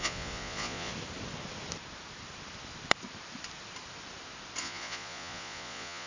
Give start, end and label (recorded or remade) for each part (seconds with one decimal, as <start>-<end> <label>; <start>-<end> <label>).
0.0-0.9 remade; 0.9-4.6 recorded; 4.6-6.1 remade